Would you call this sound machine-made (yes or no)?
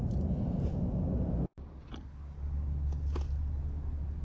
no